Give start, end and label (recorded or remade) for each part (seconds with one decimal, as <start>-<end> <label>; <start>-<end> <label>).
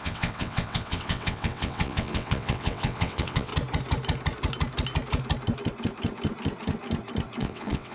0.0-3.5 remade; 3.5-7.4 recorded; 7.4-7.9 remade